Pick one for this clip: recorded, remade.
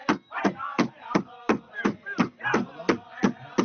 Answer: recorded